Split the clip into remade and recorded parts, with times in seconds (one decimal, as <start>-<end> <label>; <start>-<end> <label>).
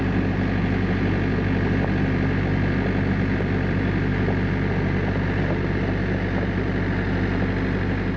0.0-8.2 recorded